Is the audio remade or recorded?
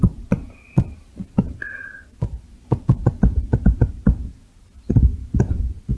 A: recorded